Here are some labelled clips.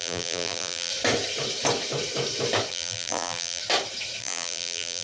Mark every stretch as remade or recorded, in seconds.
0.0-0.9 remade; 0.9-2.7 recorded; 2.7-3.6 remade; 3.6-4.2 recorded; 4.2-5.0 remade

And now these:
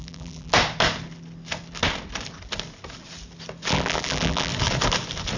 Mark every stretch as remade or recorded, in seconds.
0.0-0.5 remade; 0.5-3.7 recorded; 3.7-4.5 remade; 4.5-5.4 recorded

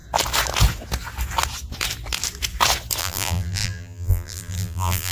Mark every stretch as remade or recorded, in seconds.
0.0-3.0 recorded; 3.0-5.1 remade

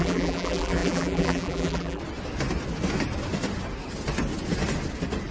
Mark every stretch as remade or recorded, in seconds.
0.0-2.0 remade; 2.0-5.3 recorded

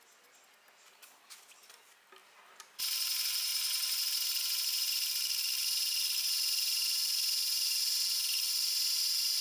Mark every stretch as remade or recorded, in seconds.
0.0-9.4 recorded

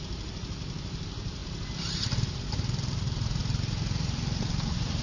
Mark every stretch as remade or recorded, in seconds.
0.0-1.4 remade; 1.4-2.4 recorded; 2.4-5.0 remade